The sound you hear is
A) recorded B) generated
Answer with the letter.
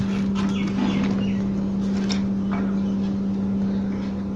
A